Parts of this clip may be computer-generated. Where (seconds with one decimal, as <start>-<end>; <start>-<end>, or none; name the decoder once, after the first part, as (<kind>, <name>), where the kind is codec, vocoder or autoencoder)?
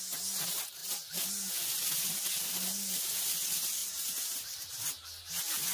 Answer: none